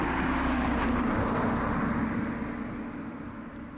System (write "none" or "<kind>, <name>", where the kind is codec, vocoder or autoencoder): none